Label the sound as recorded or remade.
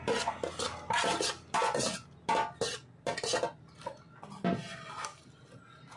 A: recorded